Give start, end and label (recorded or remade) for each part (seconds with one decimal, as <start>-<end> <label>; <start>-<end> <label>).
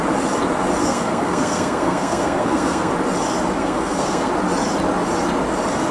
0.0-0.8 recorded; 0.8-2.9 remade; 2.9-3.6 recorded; 3.6-4.3 remade; 4.3-5.9 recorded